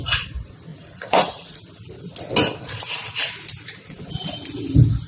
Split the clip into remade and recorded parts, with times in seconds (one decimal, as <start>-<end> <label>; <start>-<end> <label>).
0.0-0.7 recorded; 0.7-1.5 remade; 1.5-5.1 recorded